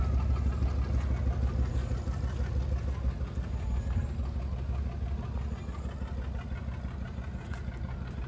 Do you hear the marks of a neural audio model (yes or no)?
no